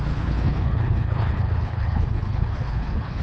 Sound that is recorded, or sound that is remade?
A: remade